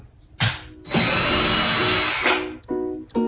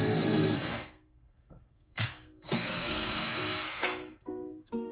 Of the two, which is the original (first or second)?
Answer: first